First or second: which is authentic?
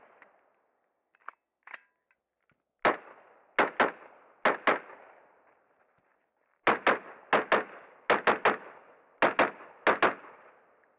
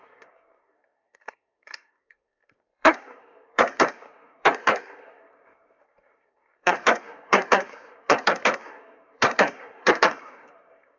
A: first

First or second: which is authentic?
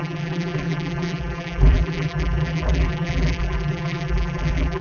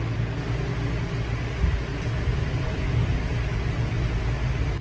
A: second